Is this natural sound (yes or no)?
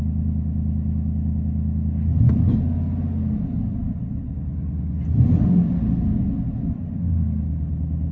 yes